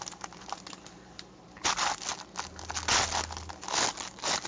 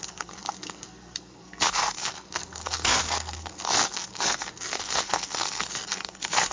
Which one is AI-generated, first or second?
second